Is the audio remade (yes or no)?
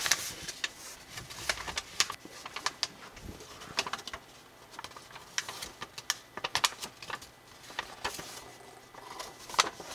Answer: no